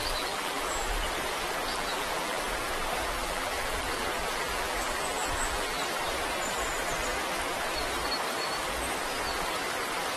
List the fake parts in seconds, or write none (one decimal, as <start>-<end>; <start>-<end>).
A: 0.0-0.9; 1.7-2.4; 3.2-5.8